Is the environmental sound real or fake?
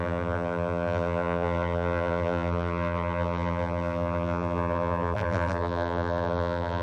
fake